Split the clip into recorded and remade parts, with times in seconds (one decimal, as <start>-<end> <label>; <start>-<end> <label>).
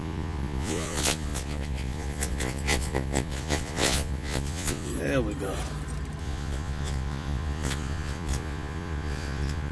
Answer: 0.0-4.9 remade; 4.9-6.2 recorded; 6.2-9.7 remade